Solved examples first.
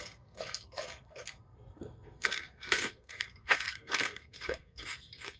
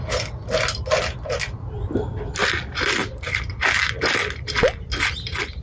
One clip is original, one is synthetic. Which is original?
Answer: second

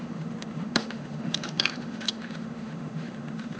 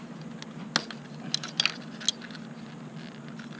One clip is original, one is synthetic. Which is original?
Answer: second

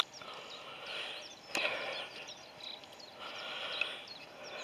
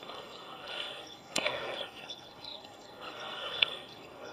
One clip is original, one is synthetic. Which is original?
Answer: first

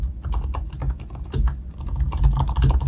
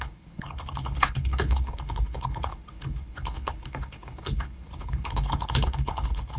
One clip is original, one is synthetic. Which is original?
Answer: first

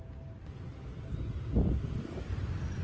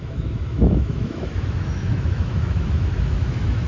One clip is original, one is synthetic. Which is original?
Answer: first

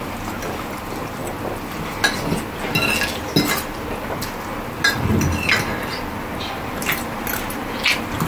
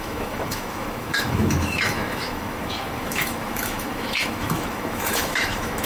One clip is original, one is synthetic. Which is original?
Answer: first